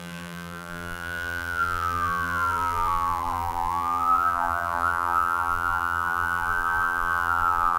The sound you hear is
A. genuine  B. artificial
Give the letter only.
B